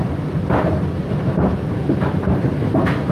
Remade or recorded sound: remade